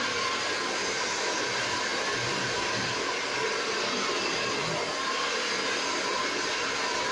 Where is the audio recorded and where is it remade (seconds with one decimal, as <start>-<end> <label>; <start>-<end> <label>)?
0.0-7.1 recorded